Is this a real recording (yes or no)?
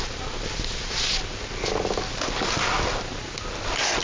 yes